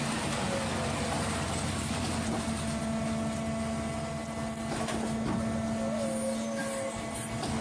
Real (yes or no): yes